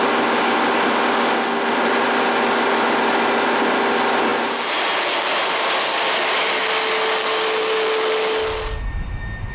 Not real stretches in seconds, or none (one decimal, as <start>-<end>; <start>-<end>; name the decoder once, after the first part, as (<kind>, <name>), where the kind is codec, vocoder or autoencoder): none